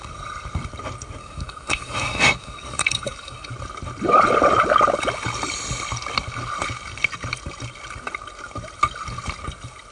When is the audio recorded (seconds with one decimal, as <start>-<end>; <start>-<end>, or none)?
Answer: 0.0-1.2; 3.5-9.9